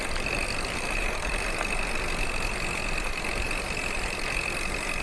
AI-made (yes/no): no